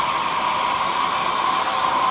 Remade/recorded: recorded